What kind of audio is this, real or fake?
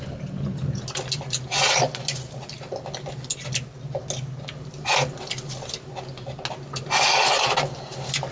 real